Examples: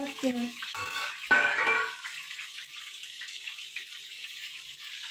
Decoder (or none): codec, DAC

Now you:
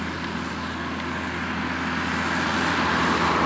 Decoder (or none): none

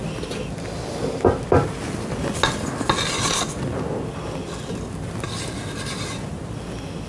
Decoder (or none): none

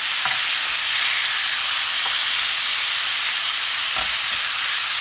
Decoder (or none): none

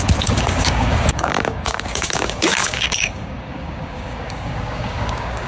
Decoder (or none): codec, DAC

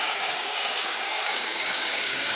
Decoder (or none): codec, DAC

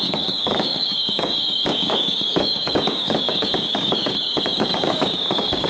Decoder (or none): codec, DAC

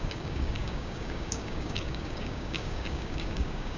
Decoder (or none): codec, DAC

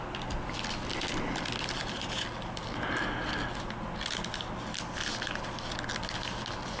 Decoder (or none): none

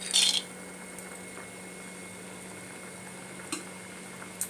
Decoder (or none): none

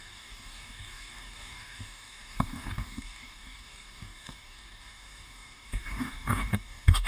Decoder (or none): codec, DAC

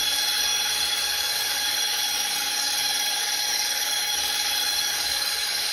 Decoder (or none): codec, DAC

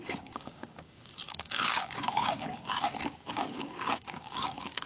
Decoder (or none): codec, DAC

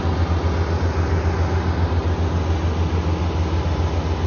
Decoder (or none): none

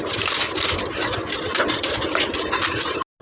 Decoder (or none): none